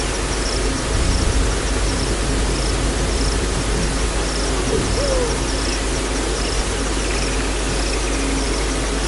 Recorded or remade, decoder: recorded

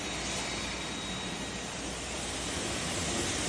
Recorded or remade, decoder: recorded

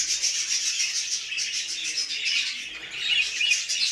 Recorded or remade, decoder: recorded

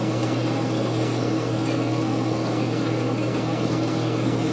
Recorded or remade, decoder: remade, codec, SNAC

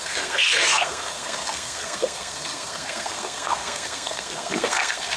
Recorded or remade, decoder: remade, codec, SNAC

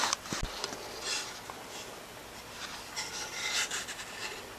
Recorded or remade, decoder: recorded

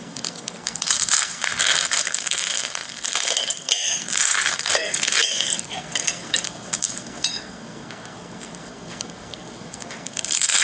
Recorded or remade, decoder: remade, codec, SNAC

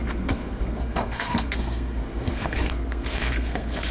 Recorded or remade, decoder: remade, codec, SNAC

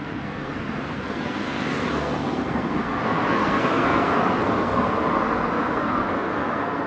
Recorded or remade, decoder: remade, codec, SNAC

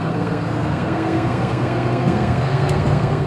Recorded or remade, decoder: remade, codec, SNAC